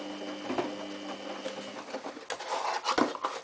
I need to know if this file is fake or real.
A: real